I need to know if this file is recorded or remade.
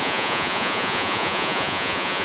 remade